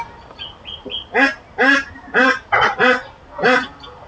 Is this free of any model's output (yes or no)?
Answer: yes